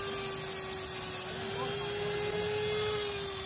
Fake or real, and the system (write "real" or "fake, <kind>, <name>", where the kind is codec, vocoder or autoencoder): real